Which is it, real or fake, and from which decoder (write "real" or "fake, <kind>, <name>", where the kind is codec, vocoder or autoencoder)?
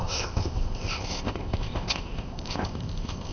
fake, codec, ZipCodec